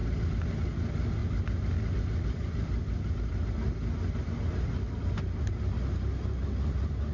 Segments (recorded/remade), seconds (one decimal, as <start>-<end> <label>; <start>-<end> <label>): 0.0-7.1 recorded